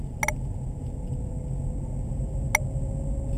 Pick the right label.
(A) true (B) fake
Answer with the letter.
A